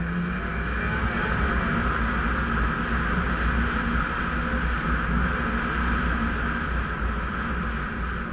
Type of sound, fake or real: real